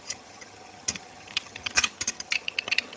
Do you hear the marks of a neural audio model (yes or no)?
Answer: yes